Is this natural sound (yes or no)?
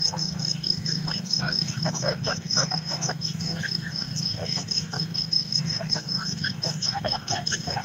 no